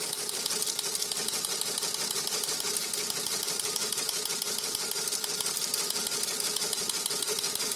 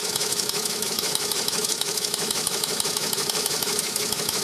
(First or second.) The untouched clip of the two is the first